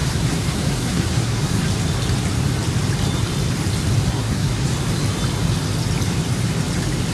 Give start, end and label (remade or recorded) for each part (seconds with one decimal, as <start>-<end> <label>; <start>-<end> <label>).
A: 0.0-1.6 remade; 1.6-4.1 recorded; 4.1-4.7 remade; 4.7-7.1 recorded